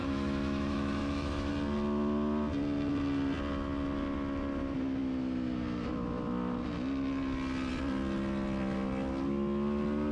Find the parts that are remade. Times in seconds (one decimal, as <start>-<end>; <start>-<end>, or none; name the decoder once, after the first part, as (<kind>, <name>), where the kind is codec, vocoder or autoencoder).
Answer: 0.0-1.5 (autoencoder, DAC-VAE)